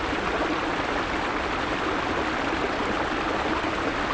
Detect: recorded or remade recorded